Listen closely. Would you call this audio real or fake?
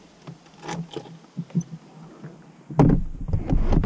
real